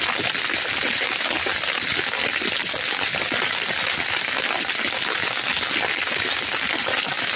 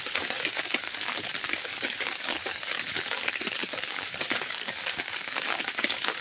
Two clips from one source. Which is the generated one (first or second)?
second